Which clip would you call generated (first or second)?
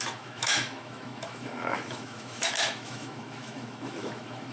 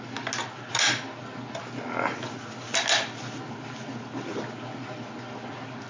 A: first